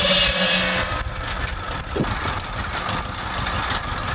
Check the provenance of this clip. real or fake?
real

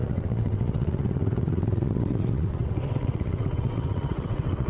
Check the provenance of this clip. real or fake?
fake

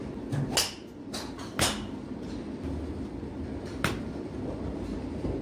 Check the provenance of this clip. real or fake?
real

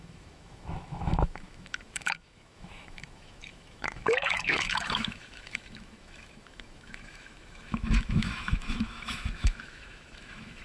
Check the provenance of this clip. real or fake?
fake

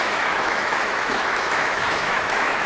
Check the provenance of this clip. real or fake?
fake